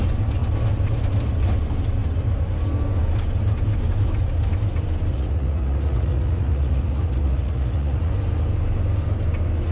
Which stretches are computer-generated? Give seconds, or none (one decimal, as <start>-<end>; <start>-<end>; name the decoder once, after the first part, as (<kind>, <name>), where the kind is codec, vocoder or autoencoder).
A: 5.1-8.1 (vocoder, Vocos)